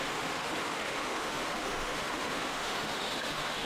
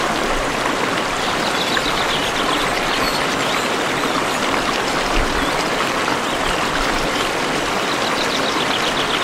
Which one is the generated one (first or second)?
first